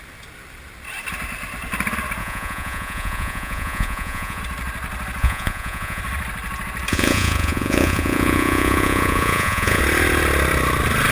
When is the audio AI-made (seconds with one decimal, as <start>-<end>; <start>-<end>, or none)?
2.2-4.4; 5.2-6.0; 6.9-9.8